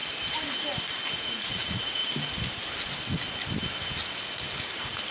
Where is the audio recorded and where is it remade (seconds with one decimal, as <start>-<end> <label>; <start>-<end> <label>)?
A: 0.0-1.2 recorded; 1.2-2.0 remade; 2.0-5.1 recorded